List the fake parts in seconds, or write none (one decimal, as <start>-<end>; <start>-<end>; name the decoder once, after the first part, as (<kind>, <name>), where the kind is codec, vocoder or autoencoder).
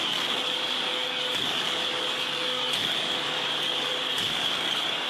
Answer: 0.0-5.1 (codec, DAC)